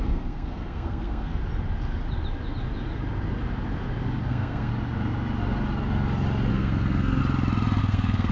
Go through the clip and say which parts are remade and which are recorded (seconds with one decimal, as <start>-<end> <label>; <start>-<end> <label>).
0.0-1.4 remade; 1.4-4.3 recorded; 4.3-4.7 remade; 4.7-6.5 recorded; 6.5-7.2 remade; 7.2-7.8 recorded; 7.8-8.3 remade